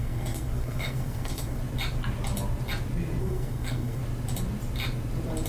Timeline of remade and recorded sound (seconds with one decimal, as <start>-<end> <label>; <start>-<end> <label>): 0.0-1.6 remade; 1.6-3.2 recorded; 3.2-4.0 remade; 4.0-5.5 recorded